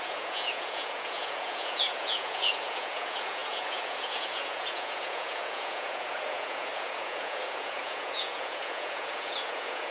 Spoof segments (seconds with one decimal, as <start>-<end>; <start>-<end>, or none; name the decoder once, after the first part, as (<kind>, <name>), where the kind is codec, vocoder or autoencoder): 0.0-9.9 (vocoder, Vocos)